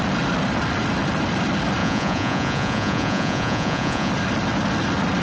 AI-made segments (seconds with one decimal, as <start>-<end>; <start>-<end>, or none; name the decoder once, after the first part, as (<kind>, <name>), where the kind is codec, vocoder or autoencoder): 1.8-4.1 (vocoder, Vocos)